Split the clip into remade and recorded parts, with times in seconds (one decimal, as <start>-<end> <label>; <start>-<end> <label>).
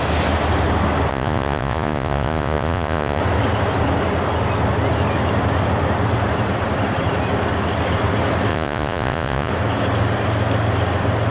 0.0-1.1 recorded; 1.1-3.2 remade; 3.2-8.5 recorded; 8.5-9.5 remade; 9.5-11.3 recorded